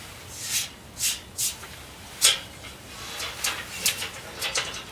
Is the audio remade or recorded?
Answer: recorded